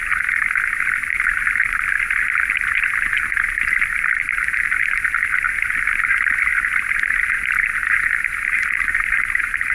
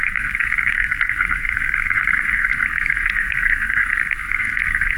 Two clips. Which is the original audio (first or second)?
first